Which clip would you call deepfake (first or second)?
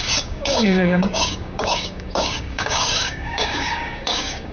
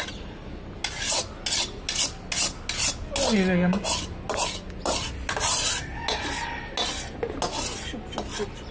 first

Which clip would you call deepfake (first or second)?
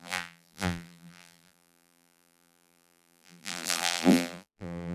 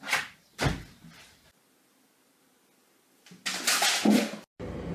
first